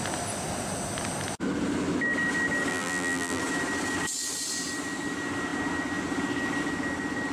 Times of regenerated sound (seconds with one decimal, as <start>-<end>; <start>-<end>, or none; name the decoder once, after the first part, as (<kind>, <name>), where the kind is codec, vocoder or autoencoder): 2.7-3.4 (vocoder, BigVGAN v2)